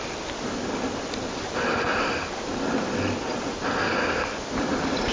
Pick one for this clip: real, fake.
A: real